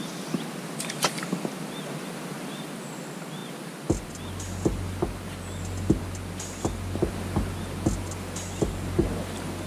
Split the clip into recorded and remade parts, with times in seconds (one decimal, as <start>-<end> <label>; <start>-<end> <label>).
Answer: 0.0-9.7 recorded